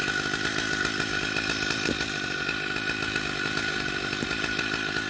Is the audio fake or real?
real